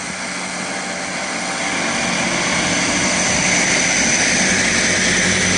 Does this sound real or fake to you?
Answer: real